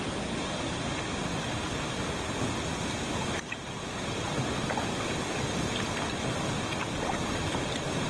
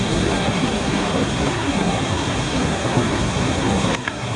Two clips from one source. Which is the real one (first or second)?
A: first